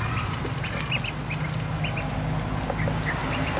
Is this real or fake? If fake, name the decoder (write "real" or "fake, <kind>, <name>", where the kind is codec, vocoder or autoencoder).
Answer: real